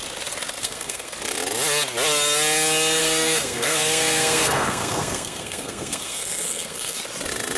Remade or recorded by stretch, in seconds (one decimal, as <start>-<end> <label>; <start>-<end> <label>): 0.0-0.6 recorded; 0.6-1.1 remade; 1.1-3.0 recorded; 3.0-7.0 remade; 7.0-7.6 recorded